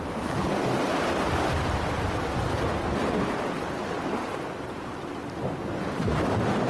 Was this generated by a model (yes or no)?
no